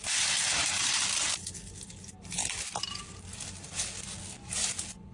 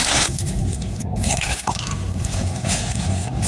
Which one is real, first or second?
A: first